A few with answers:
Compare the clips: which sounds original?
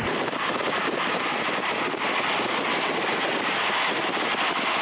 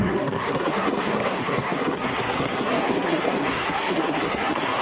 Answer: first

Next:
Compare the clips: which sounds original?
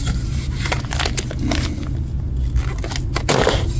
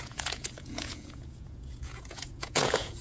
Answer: first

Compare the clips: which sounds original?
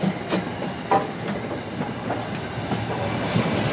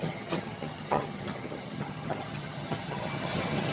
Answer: first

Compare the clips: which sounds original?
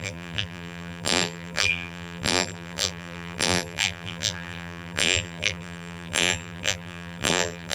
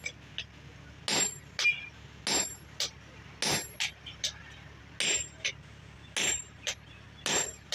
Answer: second